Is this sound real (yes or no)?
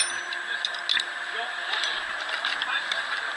yes